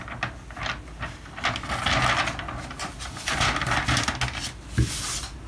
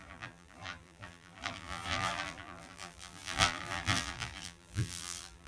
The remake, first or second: second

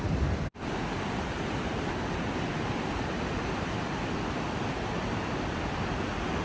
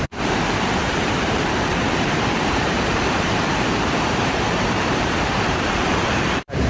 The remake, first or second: second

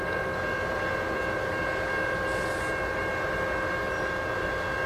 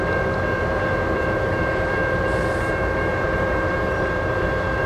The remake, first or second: second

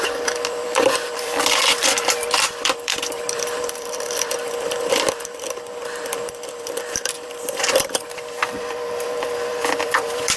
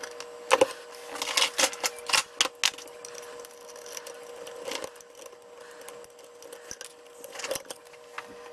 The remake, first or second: first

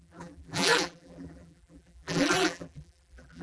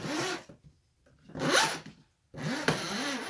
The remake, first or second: first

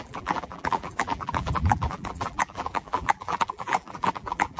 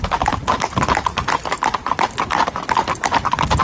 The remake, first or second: first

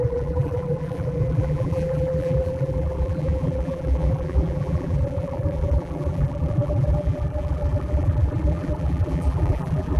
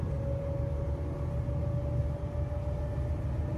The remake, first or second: first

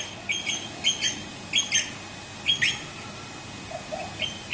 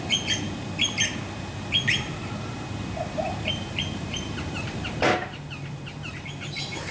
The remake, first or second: second